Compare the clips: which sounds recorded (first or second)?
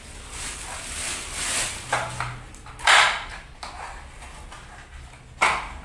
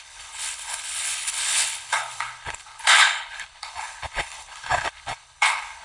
first